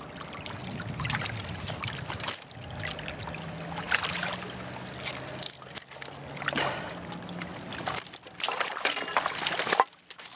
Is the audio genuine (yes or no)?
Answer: yes